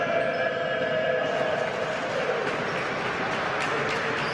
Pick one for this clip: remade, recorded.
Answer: remade